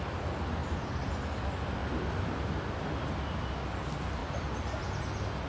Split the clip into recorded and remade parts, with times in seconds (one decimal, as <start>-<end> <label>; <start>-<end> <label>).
0.0-0.6 recorded; 0.6-1.1 remade; 1.1-1.8 recorded; 1.8-3.4 remade; 3.4-4.2 recorded; 4.2-5.0 remade; 5.0-5.5 recorded